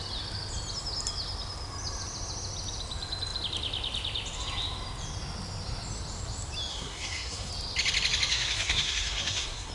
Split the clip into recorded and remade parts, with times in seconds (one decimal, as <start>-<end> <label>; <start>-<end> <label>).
0.0-6.7 recorded; 6.7-7.5 remade; 7.5-8.3 recorded; 8.3-9.7 remade